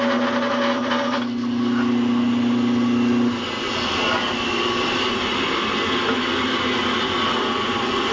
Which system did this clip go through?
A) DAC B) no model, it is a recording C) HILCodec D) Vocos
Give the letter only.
B